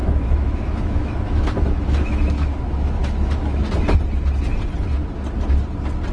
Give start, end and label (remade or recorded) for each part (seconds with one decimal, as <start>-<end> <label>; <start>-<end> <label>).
0.0-3.7 remade; 3.7-6.1 recorded